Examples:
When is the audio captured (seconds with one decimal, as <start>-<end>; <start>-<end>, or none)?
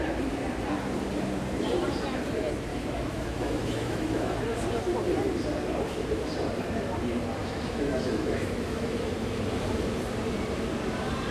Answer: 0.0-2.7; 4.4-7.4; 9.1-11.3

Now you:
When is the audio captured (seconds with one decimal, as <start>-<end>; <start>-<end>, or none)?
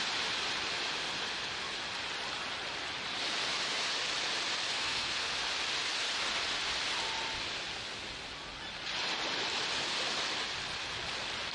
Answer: 0.0-4.7; 5.3-11.5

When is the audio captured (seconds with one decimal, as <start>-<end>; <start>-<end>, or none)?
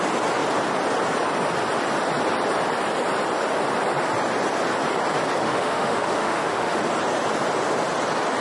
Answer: 0.0-5.4; 6.8-8.4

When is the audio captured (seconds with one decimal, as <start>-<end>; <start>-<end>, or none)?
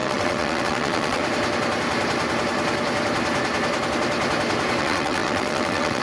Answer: 1.2-4.8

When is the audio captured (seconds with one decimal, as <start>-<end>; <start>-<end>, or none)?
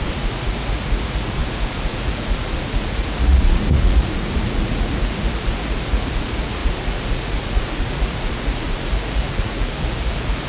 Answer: none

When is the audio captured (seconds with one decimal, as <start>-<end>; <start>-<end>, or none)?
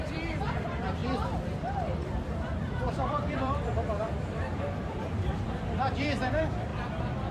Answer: none